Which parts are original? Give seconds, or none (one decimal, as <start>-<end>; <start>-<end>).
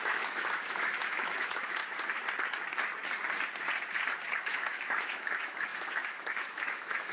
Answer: 1.8-4.3